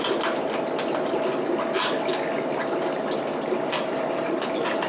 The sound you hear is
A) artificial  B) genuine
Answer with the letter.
B